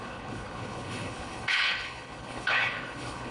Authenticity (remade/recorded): remade